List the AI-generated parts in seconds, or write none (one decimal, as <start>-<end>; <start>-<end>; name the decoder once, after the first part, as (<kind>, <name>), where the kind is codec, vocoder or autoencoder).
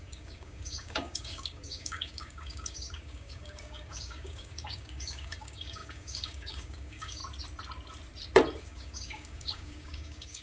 0.0-7.2 (codec, DAC); 8.6-10.4